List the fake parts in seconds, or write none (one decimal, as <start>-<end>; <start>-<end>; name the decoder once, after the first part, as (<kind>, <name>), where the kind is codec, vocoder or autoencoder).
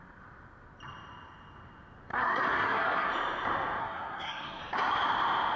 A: 2.1-3.1 (codec, SNAC); 3.8-4.6